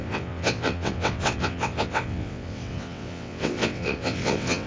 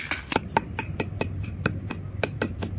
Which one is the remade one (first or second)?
first